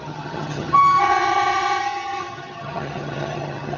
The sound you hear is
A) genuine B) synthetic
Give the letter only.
B